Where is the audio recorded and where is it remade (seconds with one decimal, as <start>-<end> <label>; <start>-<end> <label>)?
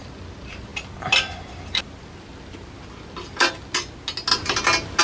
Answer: 0.0-5.0 recorded